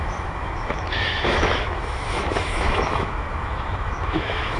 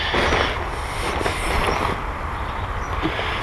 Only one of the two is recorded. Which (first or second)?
second